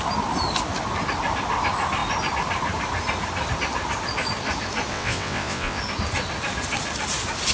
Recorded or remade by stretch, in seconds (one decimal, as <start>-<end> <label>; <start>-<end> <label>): 0.0-4.9 recorded; 4.9-5.8 remade; 5.8-7.5 recorded